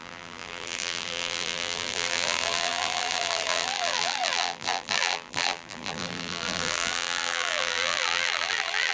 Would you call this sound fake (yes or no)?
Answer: yes